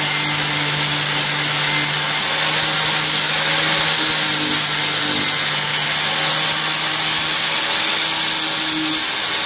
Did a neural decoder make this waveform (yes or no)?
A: no